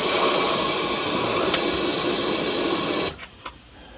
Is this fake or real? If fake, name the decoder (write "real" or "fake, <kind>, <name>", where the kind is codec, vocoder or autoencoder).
real